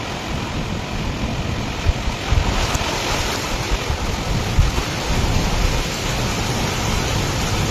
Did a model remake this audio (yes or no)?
no